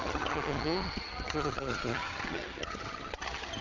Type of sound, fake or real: fake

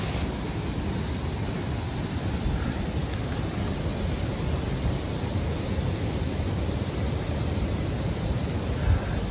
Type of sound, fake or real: real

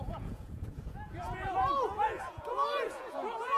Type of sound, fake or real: fake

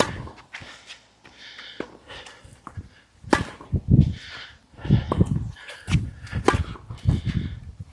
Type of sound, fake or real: real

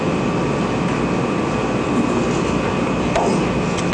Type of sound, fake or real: real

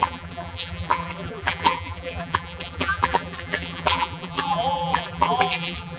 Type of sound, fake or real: fake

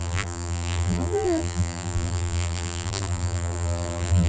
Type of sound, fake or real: fake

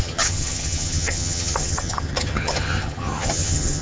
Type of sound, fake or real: fake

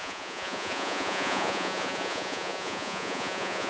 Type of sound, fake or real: fake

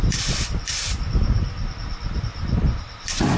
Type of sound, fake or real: fake